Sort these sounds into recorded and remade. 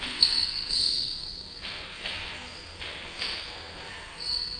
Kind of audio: remade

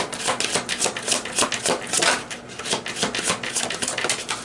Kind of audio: recorded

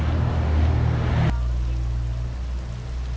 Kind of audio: recorded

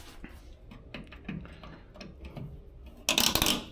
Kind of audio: recorded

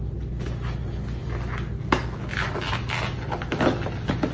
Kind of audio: recorded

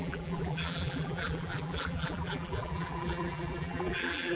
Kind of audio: remade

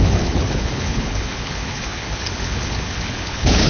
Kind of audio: remade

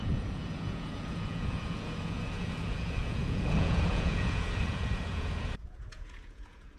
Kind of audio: remade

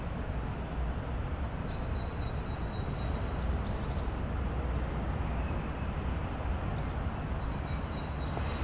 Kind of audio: recorded